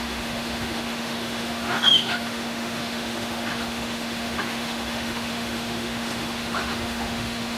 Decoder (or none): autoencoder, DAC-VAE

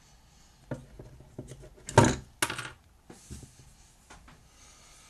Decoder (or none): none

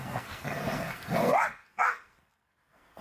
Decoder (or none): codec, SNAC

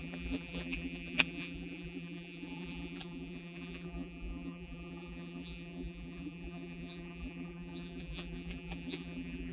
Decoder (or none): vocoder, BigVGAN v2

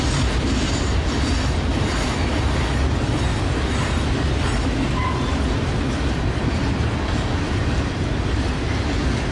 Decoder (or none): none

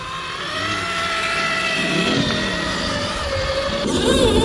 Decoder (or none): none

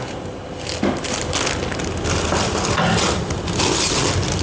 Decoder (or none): none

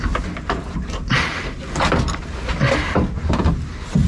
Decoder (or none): none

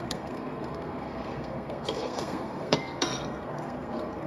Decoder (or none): codec, SNAC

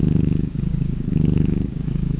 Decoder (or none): codec, DAC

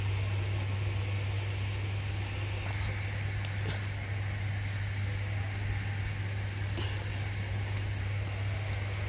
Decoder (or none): none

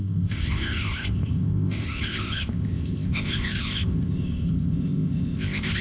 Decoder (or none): codec, ZipCodec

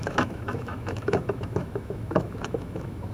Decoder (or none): autoencoder, DAC-VAE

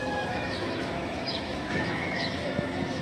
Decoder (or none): autoencoder, DAC-VAE